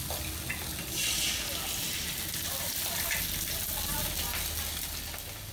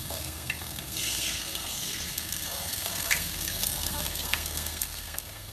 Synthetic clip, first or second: second